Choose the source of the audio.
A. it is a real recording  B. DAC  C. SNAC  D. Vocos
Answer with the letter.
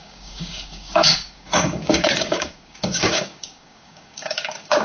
B